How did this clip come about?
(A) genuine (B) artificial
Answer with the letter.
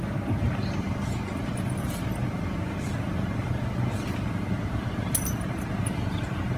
B